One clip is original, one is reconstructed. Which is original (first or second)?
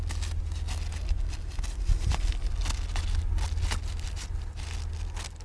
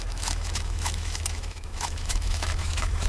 first